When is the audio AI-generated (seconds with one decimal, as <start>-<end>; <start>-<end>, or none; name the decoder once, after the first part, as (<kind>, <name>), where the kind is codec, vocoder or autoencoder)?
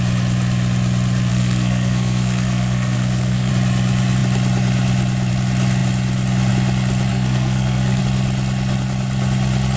1.3-3.5 (codec, SNAC); 7.1-8.0